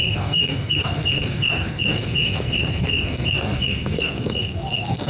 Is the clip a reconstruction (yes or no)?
yes